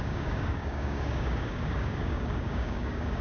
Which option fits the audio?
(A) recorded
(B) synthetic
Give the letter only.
B